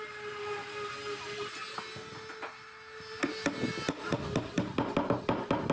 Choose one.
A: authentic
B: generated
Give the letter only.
A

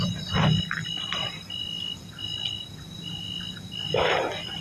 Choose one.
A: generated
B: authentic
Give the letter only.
B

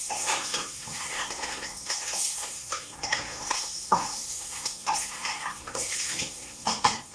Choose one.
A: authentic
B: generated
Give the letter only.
B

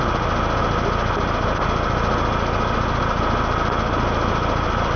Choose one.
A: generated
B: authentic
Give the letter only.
B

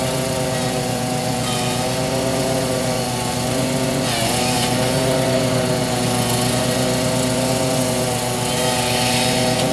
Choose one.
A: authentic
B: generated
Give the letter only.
B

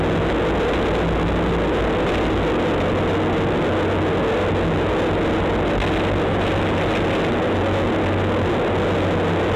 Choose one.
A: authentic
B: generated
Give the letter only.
A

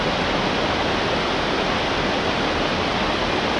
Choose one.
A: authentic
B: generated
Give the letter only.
A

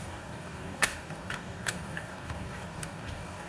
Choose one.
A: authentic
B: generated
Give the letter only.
B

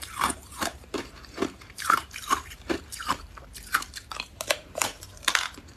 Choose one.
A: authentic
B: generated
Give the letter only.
B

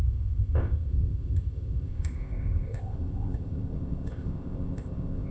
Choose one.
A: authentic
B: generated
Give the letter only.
B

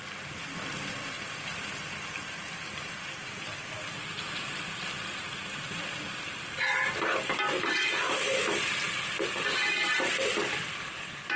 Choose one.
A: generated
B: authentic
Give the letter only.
B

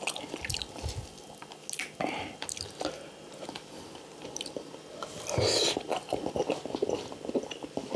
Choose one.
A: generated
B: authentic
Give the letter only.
B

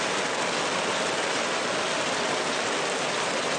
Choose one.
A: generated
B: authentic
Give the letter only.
B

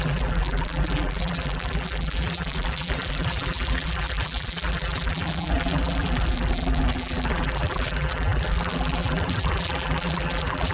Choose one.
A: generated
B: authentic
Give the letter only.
A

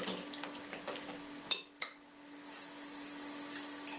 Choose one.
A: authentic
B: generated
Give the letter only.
A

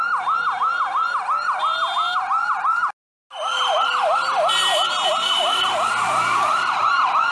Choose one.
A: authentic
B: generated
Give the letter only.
A